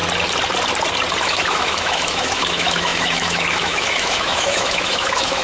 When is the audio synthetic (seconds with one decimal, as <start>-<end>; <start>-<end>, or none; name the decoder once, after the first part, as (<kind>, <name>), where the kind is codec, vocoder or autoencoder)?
1.2-5.4 (autoencoder, DAC-VAE)